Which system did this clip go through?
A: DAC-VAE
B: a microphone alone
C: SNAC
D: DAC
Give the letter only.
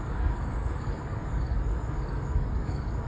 D